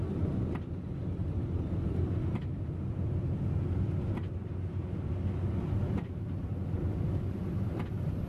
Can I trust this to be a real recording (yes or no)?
yes